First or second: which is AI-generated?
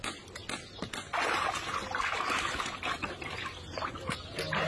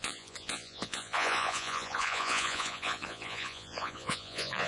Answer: second